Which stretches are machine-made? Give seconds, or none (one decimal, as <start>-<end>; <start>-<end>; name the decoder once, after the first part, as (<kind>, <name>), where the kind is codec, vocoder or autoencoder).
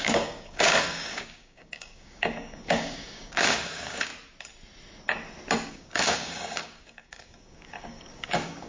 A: 0.0-4.1 (codec, DAC); 5.7-8.7